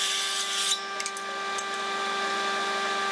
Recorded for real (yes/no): yes